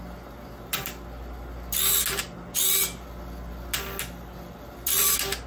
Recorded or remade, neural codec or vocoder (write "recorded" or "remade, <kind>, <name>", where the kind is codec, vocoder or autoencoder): recorded